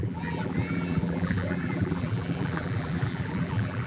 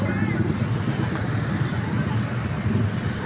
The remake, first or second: first